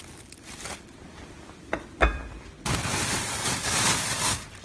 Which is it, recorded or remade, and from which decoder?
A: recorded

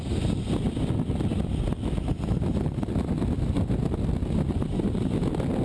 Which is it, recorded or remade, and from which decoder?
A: recorded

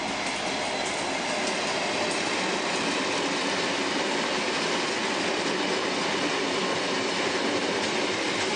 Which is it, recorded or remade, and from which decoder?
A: recorded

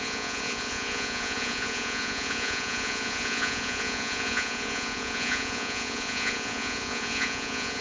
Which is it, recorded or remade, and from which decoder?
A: remade, vocoder, Vocos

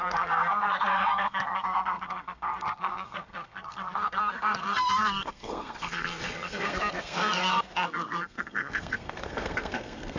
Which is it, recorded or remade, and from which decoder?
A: remade, codec, SNAC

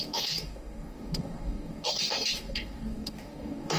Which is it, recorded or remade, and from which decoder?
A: remade, codec, DAC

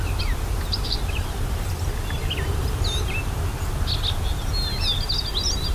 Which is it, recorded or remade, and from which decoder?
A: recorded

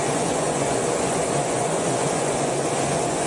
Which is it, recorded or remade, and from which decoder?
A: remade, vocoder, Vocos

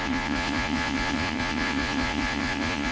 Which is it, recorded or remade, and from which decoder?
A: remade, vocoder, Vocos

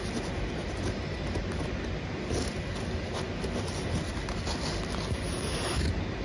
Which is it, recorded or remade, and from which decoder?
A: recorded